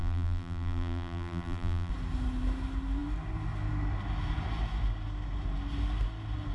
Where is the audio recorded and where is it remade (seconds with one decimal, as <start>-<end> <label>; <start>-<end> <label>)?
0.0-1.9 remade; 1.9-6.5 recorded